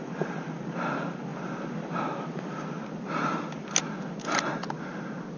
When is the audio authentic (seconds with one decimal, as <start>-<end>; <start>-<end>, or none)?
0.0-5.4